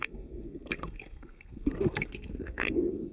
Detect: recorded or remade remade